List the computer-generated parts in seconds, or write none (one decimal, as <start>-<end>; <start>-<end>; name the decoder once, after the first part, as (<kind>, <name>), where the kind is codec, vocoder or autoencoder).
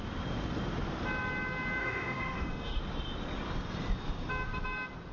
1.8-2.8 (autoencoder, DAC-VAE)